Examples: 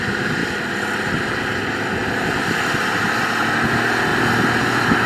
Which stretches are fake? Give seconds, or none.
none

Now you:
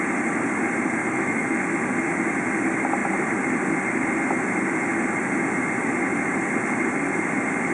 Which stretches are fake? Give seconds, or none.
1.0-1.6

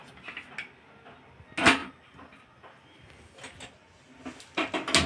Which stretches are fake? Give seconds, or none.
none

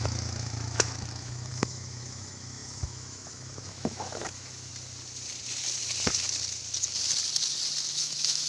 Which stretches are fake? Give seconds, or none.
0.0-4.7; 7.9-8.5